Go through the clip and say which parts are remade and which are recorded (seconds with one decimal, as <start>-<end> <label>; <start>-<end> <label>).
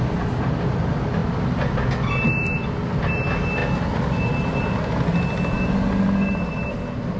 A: 0.0-7.2 recorded